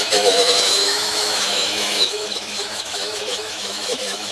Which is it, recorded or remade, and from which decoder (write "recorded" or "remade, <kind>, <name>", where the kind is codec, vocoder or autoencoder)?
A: remade, autoencoder, DAC-VAE